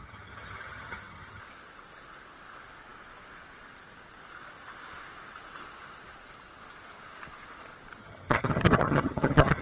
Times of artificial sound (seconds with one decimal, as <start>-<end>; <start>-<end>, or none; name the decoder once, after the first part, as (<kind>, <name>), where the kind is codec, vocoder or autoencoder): 0.0-1.4 (vocoder, HiFi-GAN); 8.0-9.6

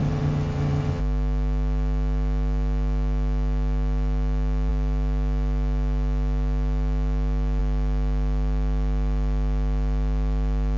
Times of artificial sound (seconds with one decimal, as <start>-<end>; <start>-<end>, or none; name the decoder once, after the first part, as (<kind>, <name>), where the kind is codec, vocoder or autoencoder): 0.0-1.0 (vocoder, HiFi-GAN)

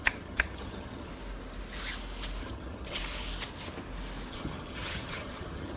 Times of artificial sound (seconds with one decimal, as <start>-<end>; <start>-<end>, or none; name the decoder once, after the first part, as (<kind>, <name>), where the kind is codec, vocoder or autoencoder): 0.0-1.1 (vocoder, HiFi-GAN); 2.4-3.0; 4.3-5.8